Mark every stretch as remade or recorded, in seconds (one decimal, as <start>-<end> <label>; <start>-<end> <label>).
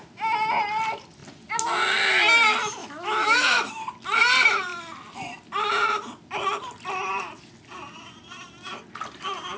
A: 0.0-2.8 recorded; 2.8-3.7 remade; 3.7-9.6 recorded